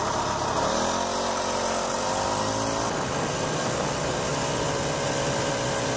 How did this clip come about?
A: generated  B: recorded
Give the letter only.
B